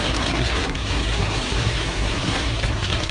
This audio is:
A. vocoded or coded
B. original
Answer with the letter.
A